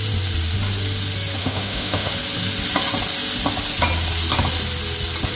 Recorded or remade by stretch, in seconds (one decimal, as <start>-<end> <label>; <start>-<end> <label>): 0.0-1.4 recorded; 1.4-2.1 remade; 2.1-5.4 recorded